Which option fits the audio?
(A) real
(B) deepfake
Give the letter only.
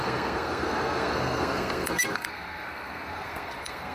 B